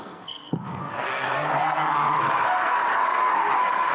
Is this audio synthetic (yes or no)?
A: yes